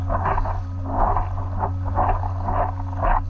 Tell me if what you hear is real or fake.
real